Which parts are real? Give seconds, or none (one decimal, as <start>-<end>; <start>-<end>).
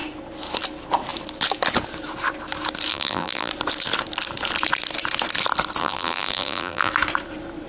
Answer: 0.0-2.9; 3.5-5.8; 6.9-7.7